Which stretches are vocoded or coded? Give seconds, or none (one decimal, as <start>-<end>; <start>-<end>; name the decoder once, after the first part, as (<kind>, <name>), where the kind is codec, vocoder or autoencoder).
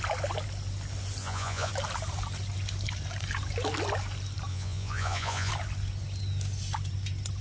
1.2-1.7 (vocoder, Vocos); 4.5-5.5